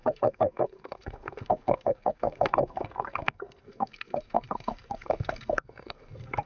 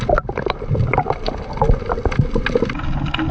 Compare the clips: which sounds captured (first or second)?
second